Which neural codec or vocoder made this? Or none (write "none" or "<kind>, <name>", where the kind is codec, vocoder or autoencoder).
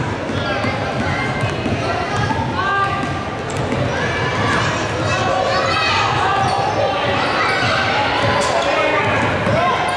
none